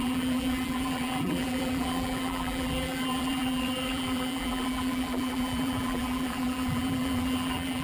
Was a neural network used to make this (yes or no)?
yes